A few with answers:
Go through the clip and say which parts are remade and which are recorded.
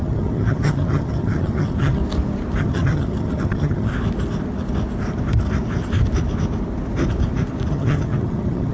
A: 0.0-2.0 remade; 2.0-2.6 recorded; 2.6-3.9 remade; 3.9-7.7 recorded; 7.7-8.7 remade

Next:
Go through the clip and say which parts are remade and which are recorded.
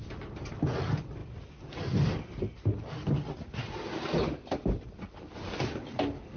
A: 0.0-6.4 recorded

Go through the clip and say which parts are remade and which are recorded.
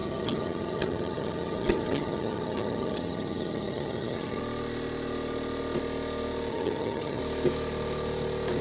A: 0.0-4.4 remade; 4.4-6.5 recorded; 6.5-7.2 remade; 7.2-8.6 recorded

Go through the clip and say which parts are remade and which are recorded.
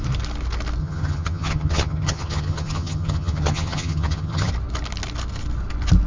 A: 0.0-0.8 recorded; 0.8-4.5 remade; 4.5-6.1 recorded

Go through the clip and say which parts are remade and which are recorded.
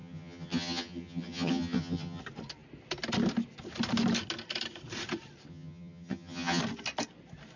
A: 0.0-2.2 remade; 2.2-5.5 recorded; 5.5-6.6 remade; 6.6-7.6 recorded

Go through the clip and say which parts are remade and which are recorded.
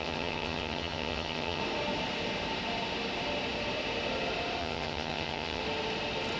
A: 0.0-1.6 remade; 1.6-4.6 recorded; 4.6-5.6 remade; 5.6-6.4 recorded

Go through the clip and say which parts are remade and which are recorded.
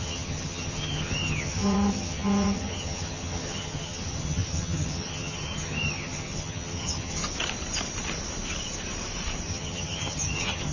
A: 0.0-7.2 remade; 7.2-9.5 recorded; 9.5-10.7 remade